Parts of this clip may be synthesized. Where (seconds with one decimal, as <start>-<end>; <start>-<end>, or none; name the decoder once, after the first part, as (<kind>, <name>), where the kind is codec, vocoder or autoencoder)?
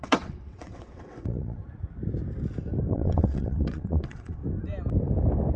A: 0.0-1.6 (vocoder, WaveNeXt); 2.9-4.4